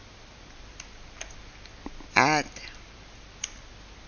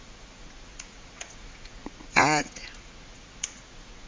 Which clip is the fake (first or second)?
second